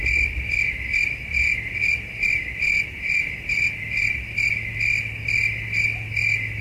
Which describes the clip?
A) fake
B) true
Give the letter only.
B